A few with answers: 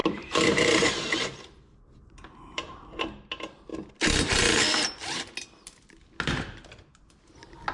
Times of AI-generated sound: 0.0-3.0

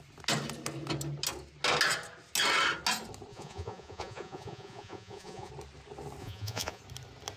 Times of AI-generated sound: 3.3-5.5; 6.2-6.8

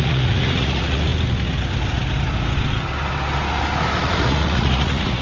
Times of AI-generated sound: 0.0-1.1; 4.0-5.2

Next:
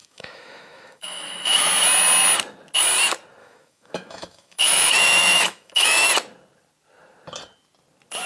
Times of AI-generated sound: 0.0-1.7; 3.4-6.1